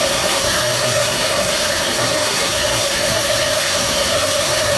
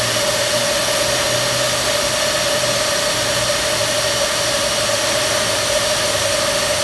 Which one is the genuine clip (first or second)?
second